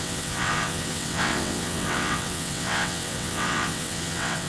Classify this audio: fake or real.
fake